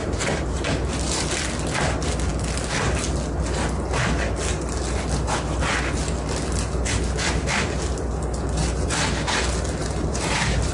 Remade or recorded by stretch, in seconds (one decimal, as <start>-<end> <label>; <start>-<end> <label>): 0.0-1.3 remade; 1.3-9.8 recorded; 9.8-10.7 remade